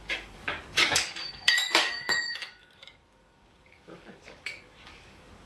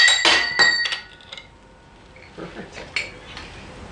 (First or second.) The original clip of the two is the second